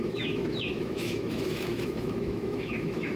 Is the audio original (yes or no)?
no